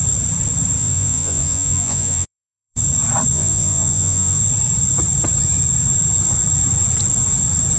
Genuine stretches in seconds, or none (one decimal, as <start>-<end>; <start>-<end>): 0.0-0.8; 2.8-3.3; 4.4-7.8